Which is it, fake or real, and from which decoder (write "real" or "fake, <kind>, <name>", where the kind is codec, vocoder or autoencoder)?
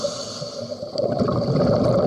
fake, vocoder, BigVGAN v2